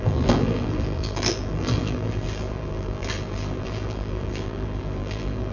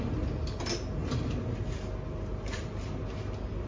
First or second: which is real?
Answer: second